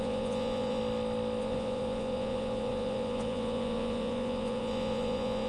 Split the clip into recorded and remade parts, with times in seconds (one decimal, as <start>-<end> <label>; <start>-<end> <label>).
0.0-0.8 remade; 0.8-1.4 recorded; 1.4-5.5 remade